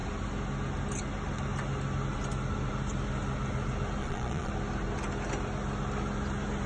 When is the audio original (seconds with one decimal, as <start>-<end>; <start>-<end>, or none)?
0.0-4.0; 4.5-6.7